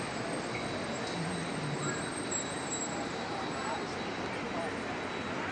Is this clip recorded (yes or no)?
no